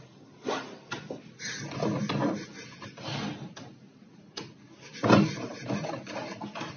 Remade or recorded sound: recorded